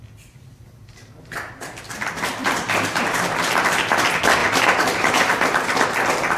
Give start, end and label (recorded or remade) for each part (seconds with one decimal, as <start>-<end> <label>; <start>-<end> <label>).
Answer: 0.0-1.0 recorded; 1.0-1.5 remade; 1.5-2.4 recorded; 2.4-4.0 remade; 4.0-4.4 recorded; 4.4-5.3 remade; 5.3-6.4 recorded